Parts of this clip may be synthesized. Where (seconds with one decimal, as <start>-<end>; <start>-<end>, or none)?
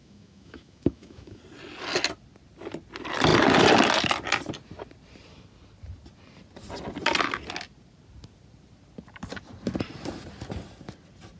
0.0-1.4